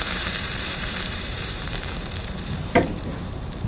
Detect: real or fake fake